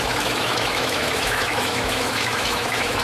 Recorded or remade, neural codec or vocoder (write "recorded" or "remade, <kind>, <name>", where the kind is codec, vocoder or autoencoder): remade, autoencoder, DAC-VAE